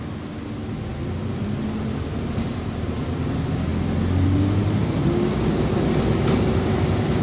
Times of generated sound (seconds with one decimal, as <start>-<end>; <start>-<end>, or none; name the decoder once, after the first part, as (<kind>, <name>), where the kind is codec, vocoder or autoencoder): none